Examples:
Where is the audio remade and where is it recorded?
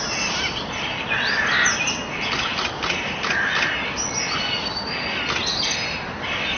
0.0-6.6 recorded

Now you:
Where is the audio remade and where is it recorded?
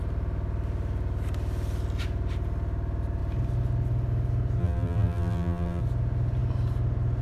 0.0-4.6 recorded; 4.6-5.8 remade; 5.8-7.2 recorded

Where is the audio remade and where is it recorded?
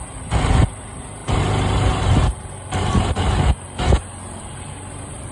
0.0-5.3 recorded